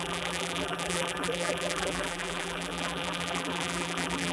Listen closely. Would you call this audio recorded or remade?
remade